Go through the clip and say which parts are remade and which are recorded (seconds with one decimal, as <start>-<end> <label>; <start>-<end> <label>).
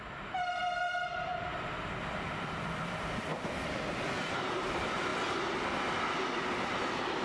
0.0-1.3 remade; 1.3-2.4 recorded; 2.4-5.1 remade; 5.1-7.2 recorded